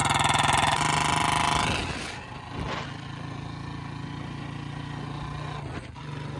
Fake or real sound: real